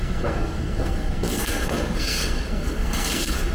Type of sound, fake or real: fake